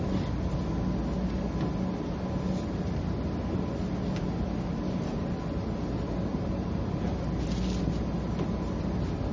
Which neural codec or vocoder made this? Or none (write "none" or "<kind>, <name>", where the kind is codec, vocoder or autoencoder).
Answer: none